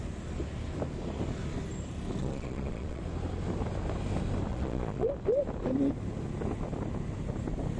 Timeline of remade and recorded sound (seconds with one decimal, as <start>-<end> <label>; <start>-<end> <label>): 0.0-2.2 recorded; 2.2-3.0 remade; 3.0-4.5 recorded; 4.5-5.1 remade; 5.1-7.8 recorded